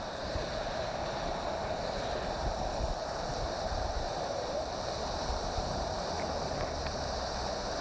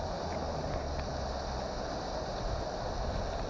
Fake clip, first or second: first